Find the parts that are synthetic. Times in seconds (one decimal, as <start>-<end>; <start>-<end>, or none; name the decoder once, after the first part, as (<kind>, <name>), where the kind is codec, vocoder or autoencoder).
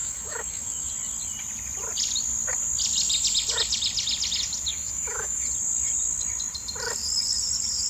0.0-0.9 (autoencoder, DAC-VAE); 4.7-5.4